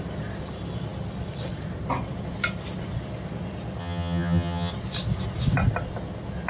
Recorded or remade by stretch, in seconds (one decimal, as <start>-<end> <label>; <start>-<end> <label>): 0.0-3.8 recorded; 3.8-4.7 remade; 4.7-6.5 recorded